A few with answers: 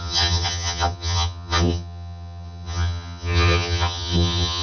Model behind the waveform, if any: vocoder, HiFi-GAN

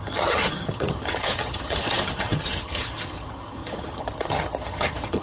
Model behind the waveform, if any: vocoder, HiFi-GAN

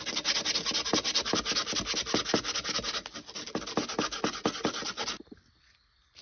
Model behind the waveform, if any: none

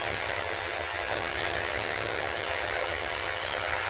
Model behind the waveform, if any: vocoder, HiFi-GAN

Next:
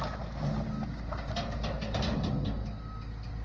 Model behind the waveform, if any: none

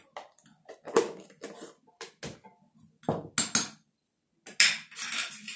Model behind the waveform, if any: none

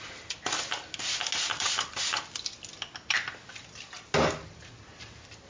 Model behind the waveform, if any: none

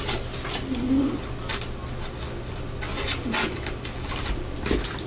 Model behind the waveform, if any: none